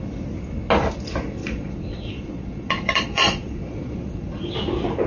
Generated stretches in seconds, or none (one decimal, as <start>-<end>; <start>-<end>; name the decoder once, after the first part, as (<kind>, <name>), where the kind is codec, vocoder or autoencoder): 1.4-4.5 (vocoder, Vocos)